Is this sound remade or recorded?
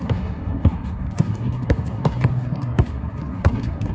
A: remade